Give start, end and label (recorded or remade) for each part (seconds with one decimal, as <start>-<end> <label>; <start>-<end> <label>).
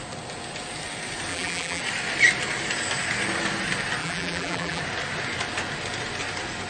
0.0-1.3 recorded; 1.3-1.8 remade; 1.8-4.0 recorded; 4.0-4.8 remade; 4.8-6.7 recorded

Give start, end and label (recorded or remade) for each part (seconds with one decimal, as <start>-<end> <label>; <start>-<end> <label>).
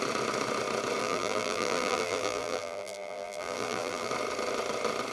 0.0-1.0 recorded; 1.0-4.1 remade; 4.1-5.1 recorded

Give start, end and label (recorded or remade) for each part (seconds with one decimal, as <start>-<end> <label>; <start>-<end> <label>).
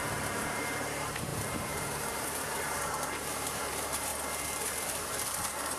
0.0-4.1 remade; 4.1-5.8 recorded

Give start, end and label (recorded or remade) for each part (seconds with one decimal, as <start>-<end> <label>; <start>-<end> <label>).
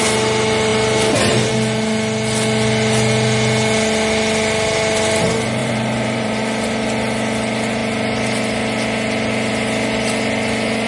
0.0-5.6 recorded; 5.6-6.4 remade; 6.4-10.9 recorded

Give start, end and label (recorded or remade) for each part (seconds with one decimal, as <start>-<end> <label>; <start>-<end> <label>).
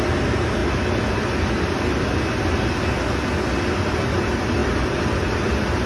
0.0-4.6 recorded; 4.6-5.9 remade